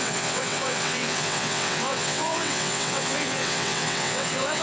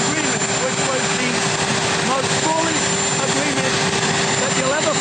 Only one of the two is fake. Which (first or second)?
first